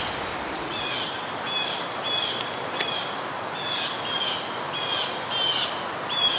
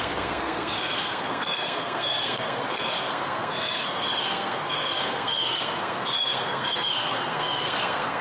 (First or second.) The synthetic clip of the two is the second